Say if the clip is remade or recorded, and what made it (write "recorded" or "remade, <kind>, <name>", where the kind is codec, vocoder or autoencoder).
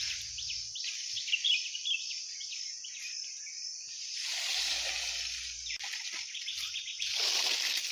recorded